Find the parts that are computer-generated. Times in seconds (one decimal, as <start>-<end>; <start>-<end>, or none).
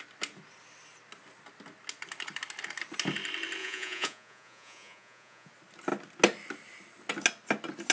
3.6-5.5